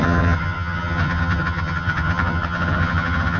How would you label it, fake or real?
fake